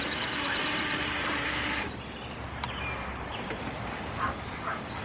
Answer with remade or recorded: remade